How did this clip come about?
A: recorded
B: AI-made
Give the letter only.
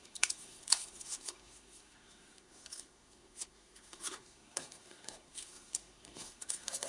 B